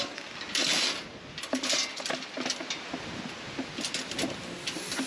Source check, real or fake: real